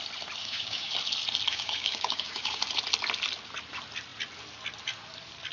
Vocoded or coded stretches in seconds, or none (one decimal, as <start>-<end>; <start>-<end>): 0.4-0.9; 1.5-2.6